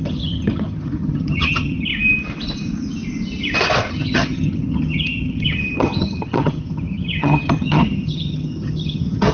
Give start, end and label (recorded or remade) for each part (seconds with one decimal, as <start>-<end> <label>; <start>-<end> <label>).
0.0-1.9 remade; 1.9-3.9 recorded; 3.9-9.3 remade